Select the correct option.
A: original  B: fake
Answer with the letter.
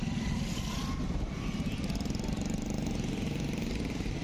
A